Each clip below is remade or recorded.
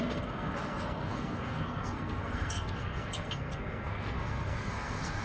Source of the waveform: remade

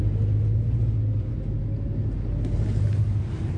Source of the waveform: recorded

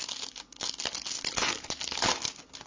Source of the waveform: recorded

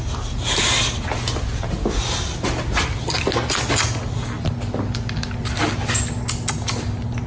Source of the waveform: recorded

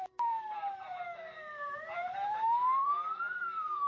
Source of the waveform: remade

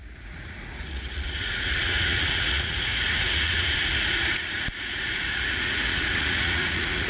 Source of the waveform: remade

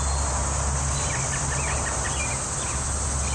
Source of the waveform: recorded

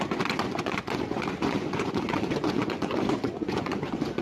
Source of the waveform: remade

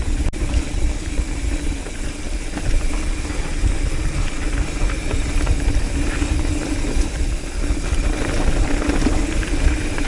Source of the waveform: recorded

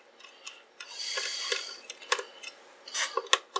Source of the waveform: recorded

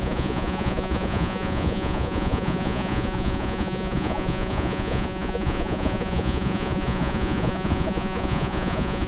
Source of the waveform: remade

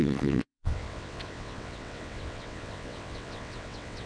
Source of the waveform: remade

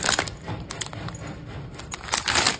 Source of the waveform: recorded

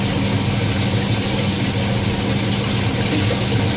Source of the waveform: recorded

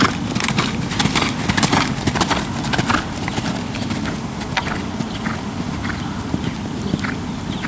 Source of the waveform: recorded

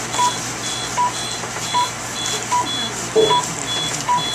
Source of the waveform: recorded